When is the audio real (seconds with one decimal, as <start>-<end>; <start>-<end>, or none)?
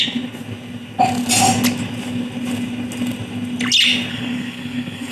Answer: 0.0-4.1